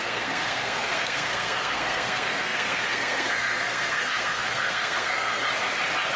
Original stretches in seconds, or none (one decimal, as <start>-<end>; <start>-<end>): 5.4-6.2